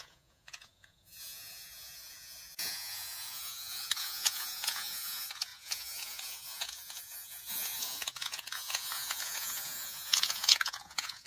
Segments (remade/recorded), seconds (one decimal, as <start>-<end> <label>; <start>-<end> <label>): 0.0-11.3 remade